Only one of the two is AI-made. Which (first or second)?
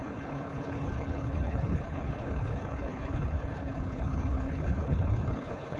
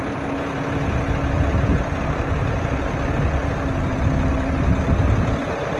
first